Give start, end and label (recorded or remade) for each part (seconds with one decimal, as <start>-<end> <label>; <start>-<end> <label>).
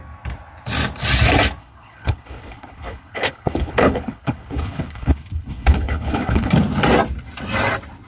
0.0-1.6 recorded; 1.6-6.5 remade; 6.5-8.1 recorded